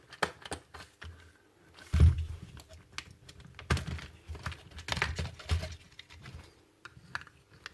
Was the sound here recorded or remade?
recorded